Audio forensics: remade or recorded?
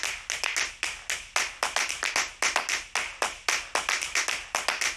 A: recorded